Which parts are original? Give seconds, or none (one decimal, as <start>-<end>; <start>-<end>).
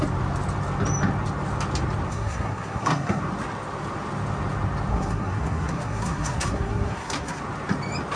0.0-2.1; 3.2-4.9; 7.4-8.2